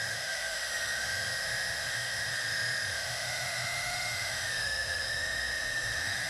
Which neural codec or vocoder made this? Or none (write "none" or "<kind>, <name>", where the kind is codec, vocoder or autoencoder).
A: autoencoder, DAC-VAE